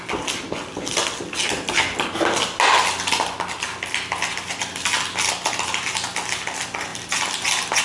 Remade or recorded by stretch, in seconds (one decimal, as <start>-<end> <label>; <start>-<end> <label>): 0.0-7.8 recorded